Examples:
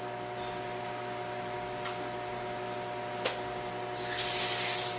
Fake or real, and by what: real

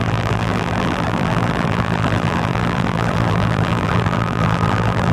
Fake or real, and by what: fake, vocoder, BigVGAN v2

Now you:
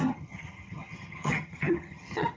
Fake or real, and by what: fake, vocoder, HiFi-GAN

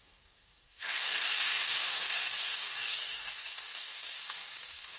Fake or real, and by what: fake, codec, DAC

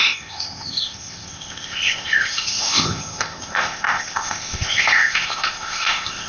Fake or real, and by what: fake, codec, ZipCodec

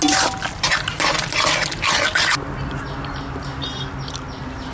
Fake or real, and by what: real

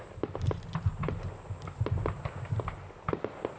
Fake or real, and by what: real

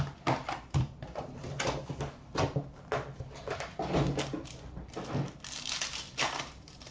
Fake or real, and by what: real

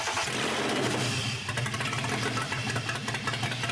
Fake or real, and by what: real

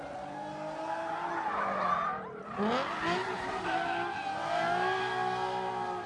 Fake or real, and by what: real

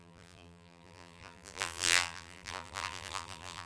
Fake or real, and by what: fake, vocoder, BigVGAN v2